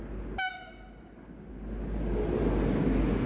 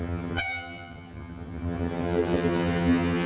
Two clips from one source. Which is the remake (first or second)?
second